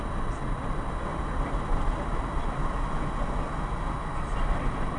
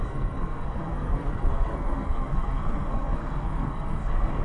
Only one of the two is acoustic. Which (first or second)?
first